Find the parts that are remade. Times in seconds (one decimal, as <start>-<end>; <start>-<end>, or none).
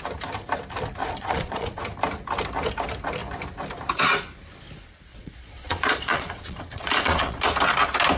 1.0-1.8; 5.1-7.4